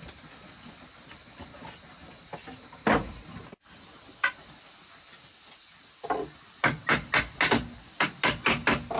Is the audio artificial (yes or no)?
no